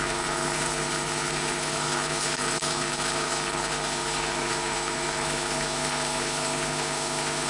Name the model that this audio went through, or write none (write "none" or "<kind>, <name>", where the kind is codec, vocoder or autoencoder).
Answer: codec, HILCodec